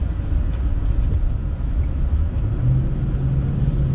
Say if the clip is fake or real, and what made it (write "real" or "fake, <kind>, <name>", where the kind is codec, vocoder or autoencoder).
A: real